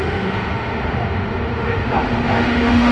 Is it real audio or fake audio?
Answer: fake